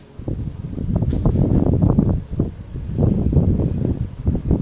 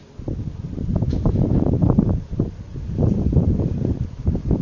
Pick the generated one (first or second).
second